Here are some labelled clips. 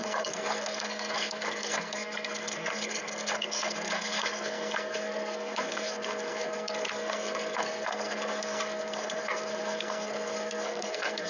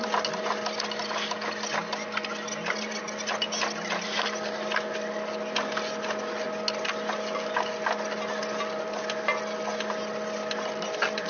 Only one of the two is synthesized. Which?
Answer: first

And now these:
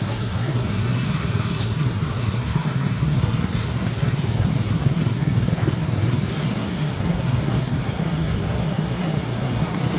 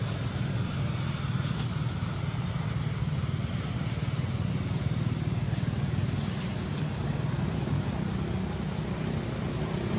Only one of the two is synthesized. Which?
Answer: first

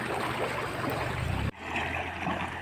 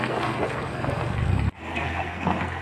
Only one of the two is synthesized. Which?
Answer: second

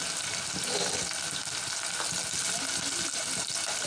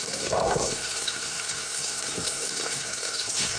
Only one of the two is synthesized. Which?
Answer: second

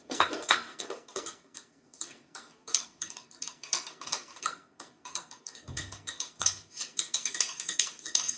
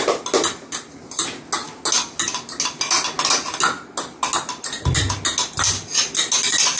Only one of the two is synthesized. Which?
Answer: first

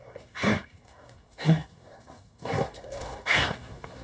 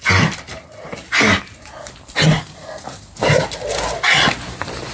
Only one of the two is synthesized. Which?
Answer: first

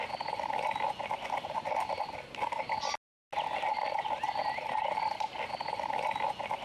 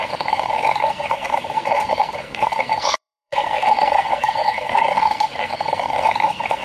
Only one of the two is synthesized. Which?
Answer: second